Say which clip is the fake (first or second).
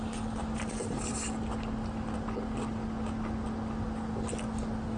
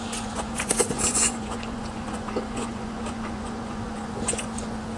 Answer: second